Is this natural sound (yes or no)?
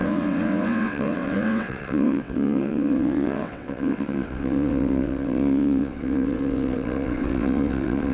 no